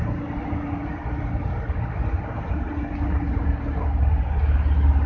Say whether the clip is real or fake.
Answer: real